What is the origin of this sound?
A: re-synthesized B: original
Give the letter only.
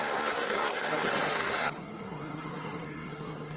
A